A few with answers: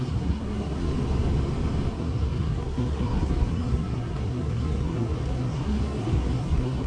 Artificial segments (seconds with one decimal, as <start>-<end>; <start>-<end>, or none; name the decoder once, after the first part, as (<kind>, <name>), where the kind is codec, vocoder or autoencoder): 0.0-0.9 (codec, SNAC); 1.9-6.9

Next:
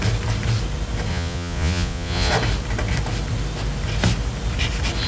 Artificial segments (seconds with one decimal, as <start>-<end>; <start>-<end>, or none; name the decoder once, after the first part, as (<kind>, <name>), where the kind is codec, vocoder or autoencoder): 1.1-2.3 (vocoder, Vocos)

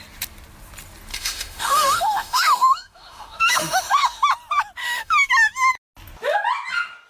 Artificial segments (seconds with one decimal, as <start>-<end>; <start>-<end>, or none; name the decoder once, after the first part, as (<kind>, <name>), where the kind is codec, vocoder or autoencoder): 1.1-4.3 (autoencoder, DAC-VAE); 4.8-5.3

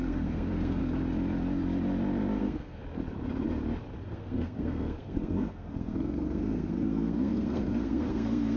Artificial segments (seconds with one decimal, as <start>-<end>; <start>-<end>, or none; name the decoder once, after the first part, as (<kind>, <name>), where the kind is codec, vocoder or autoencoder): 0.0-0.8 (codec, SNAC); 2.4-2.8; 4.0-8.6

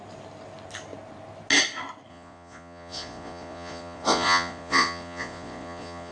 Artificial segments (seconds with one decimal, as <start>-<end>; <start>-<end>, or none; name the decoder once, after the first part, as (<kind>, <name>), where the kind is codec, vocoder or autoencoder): 2.1-6.1 (vocoder, Vocos)

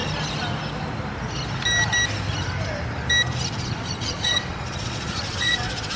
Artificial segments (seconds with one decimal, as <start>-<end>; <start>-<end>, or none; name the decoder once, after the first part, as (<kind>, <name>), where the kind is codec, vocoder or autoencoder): 3.6-6.0 (vocoder, Vocos)